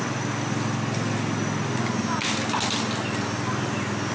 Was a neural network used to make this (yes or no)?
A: no